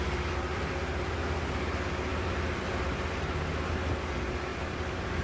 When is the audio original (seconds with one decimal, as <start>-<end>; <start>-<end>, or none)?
0.0-0.5; 1.0-2.1; 3.2-4.5